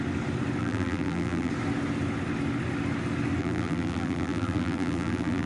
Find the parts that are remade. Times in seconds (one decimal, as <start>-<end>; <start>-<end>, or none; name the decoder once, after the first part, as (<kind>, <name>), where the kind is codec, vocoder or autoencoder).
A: 0.6-1.5 (vocoder, BigVGAN v2); 3.4-5.5